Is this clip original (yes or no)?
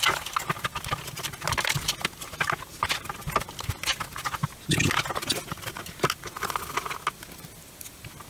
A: yes